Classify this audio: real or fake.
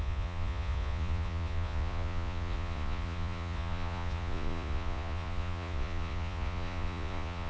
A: fake